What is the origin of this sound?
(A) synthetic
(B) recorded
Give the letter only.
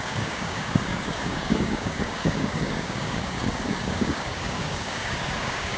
A